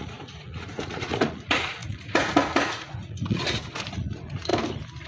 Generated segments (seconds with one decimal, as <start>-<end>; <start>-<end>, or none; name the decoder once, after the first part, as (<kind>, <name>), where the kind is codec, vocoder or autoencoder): 0.0-4.5 (vocoder, Vocos)